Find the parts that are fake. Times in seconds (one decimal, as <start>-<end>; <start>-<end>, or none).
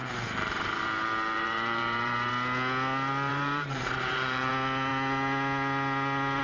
0.0-2.3; 3.3-4.5